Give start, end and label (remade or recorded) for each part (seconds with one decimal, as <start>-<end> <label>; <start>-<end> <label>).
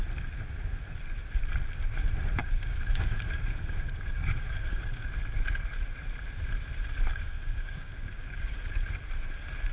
0.0-2.4 recorded; 2.4-5.1 remade; 5.1-7.1 recorded; 7.1-8.6 remade; 8.6-9.7 recorded